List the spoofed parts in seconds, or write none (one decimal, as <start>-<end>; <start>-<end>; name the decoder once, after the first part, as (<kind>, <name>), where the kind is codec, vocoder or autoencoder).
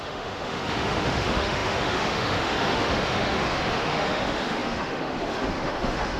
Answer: 0.0-6.2 (autoencoder, DAC-VAE)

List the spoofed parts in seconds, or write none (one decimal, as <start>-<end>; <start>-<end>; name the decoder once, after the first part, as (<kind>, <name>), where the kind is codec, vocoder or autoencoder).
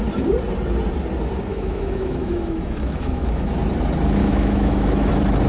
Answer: 1.5-3.5 (autoencoder, DAC-VAE); 4.2-5.1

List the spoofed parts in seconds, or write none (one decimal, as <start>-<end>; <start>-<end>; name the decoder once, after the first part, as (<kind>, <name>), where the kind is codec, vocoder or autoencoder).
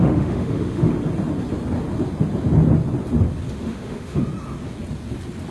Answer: 0.0-0.9 (autoencoder, DAC-VAE); 3.5-4.2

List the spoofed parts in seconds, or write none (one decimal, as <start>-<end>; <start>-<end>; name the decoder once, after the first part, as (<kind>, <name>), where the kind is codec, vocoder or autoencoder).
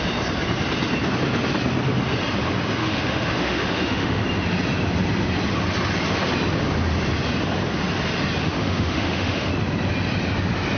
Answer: 2.8-4.2 (autoencoder, DAC-VAE); 8.4-9.5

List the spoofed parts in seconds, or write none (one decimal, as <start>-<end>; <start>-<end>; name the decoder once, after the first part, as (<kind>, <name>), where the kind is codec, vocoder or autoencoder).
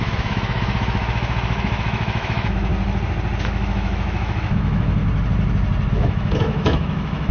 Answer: 0.0-2.7 (autoencoder, DAC-VAE); 3.4-5.0; 5.9-7.3